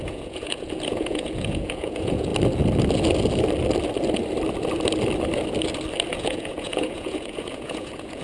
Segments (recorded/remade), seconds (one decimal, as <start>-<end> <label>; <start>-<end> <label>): 0.0-2.3 remade; 2.3-6.1 recorded; 6.1-8.2 remade